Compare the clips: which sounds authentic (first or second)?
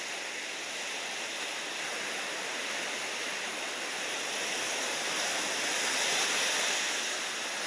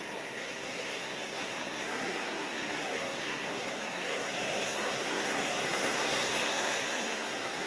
first